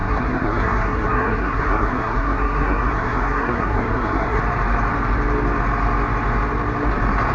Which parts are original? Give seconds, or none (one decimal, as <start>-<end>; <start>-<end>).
4.4-7.3